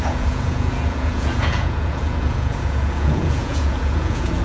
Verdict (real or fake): fake